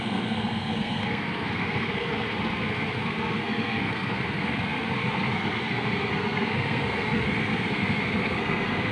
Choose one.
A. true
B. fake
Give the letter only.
B